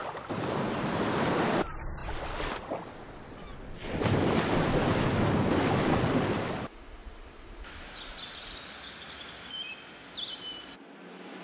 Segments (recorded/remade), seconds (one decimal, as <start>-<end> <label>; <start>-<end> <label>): 0.0-1.4 remade; 1.4-3.5 recorded; 3.5-6.4 remade; 6.4-7.0 recorded; 7.0-7.7 remade; 7.7-11.4 recorded